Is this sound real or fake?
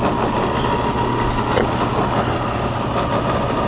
real